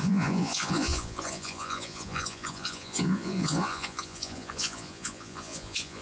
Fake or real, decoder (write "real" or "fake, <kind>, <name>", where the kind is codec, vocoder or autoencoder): fake, vocoder, Vocos